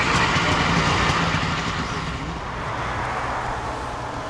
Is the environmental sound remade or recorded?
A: recorded